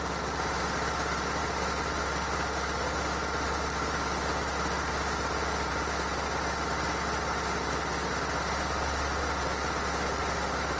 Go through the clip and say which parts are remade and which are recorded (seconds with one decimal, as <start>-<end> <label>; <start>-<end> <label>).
0.0-10.8 recorded